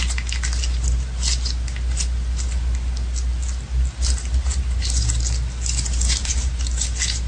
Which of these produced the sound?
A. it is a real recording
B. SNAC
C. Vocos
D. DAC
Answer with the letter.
A